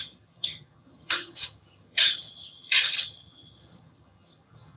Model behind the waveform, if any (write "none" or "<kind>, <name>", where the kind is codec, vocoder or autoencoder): vocoder, HiFi-GAN